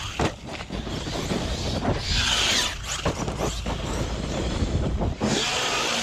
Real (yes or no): yes